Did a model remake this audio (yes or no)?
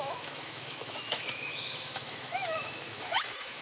yes